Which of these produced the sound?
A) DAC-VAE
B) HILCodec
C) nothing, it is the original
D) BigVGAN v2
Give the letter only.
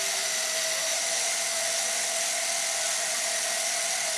C